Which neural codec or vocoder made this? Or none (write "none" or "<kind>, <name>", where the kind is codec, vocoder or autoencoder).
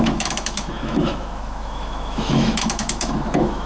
autoencoder, DAC-VAE